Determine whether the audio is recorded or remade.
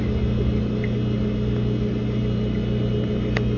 recorded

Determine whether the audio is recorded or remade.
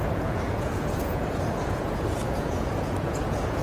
remade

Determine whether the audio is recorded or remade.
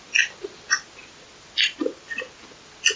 recorded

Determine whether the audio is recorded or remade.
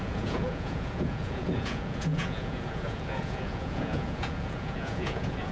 remade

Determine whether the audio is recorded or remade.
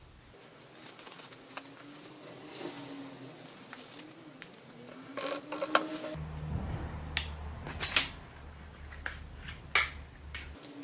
recorded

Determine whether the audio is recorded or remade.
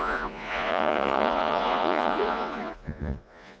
remade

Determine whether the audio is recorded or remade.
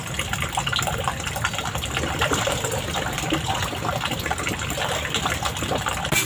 recorded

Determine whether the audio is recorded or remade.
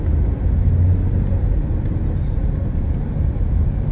recorded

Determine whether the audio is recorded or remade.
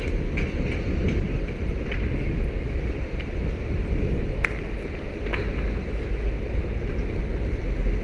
recorded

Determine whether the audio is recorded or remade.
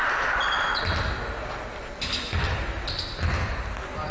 recorded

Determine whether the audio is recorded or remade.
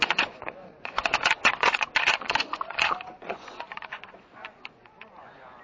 remade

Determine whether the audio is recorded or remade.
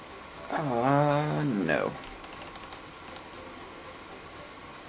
recorded